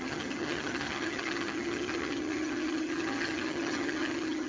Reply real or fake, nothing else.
fake